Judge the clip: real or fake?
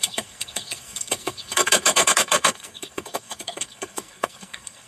fake